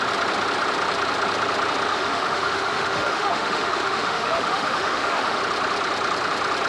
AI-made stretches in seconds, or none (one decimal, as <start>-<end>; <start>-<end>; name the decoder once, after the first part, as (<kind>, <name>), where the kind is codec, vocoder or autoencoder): 1.9-5.4 (autoencoder, DAC-VAE)